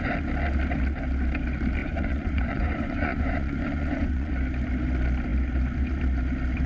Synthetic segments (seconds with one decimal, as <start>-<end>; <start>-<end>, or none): 1.8-4.3